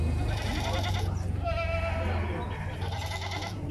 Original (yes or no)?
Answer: yes